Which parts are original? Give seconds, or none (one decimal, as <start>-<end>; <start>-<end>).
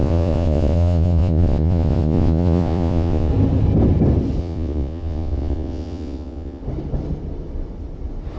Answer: 3.3-4.4; 6.6-8.4